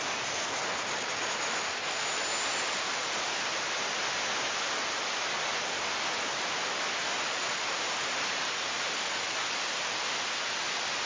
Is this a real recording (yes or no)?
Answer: yes